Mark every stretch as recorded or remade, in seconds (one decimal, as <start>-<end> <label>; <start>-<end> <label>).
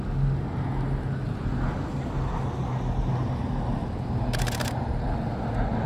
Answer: 0.0-3.8 recorded; 3.8-4.8 remade; 4.8-5.9 recorded